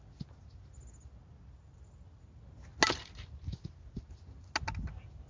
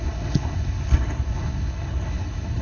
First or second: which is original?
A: first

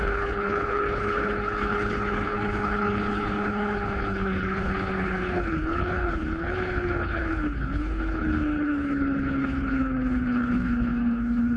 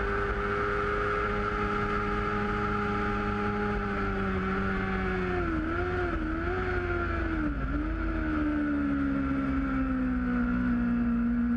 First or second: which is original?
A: second